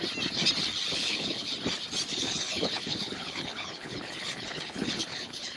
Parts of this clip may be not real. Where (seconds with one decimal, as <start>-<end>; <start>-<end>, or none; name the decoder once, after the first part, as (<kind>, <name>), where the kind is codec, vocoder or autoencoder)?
0.9-1.5 (codec, HILCodec); 2.1-5.6